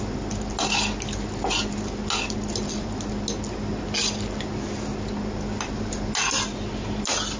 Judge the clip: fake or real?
real